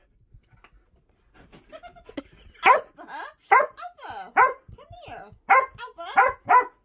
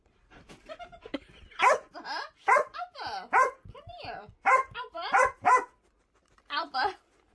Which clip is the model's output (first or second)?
second